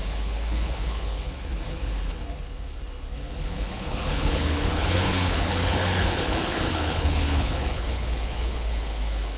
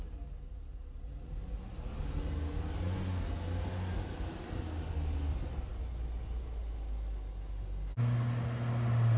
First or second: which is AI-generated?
first